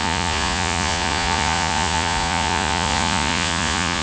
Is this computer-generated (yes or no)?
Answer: yes